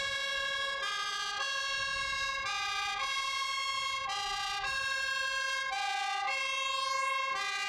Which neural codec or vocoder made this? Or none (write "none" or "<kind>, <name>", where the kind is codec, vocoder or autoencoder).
none